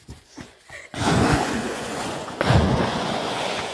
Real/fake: fake